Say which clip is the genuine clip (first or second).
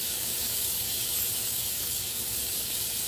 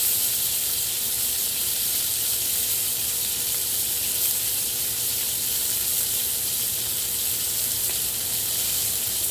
second